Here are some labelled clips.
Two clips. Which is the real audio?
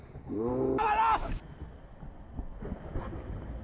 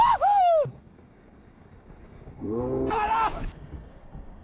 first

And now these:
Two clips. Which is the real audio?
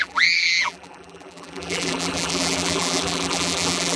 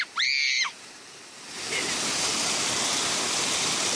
second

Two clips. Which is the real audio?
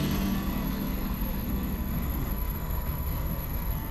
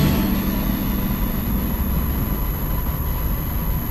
second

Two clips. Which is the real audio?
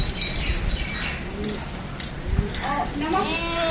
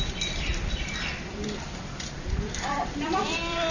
first